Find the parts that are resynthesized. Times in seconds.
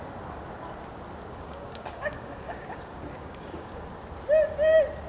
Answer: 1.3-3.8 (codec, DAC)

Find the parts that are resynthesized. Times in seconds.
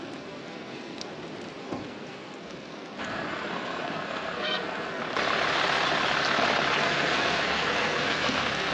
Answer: 0.0-1.1 (codec, SNAC); 1.6-5.0; 6.8-8.7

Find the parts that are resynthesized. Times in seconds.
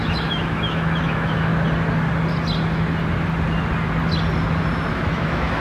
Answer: 0.0-1.5 (autoencoder, DAC-VAE); 4.9-5.6